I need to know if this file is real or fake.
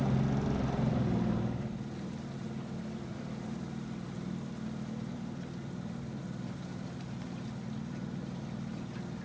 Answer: real